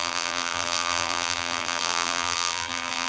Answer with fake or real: fake